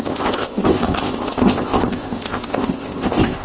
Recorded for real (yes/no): no